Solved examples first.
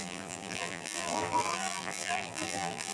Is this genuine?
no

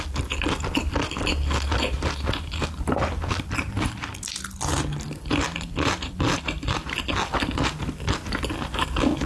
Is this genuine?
yes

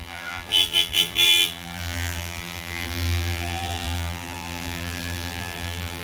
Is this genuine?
no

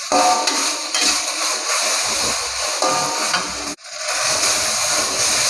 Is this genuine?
yes